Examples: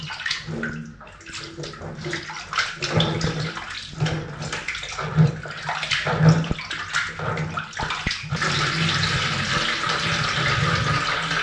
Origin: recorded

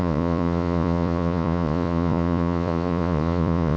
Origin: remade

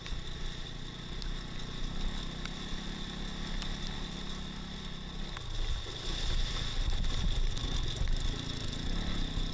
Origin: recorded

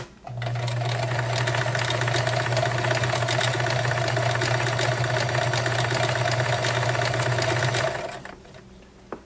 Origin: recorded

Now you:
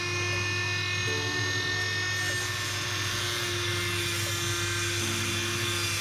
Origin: recorded